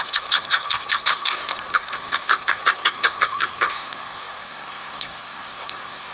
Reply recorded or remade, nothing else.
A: remade